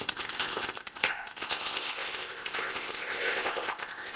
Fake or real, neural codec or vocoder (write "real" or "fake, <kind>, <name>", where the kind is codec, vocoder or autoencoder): fake, codec, ZipCodec